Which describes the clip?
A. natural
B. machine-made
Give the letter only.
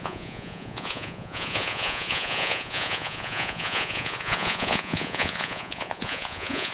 B